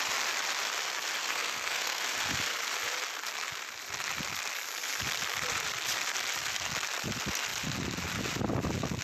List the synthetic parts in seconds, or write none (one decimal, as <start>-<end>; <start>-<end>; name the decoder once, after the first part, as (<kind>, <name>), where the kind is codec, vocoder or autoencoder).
1.2-2.0 (codec, SNAC)